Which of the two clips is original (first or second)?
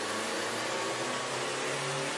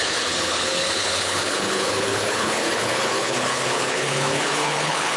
first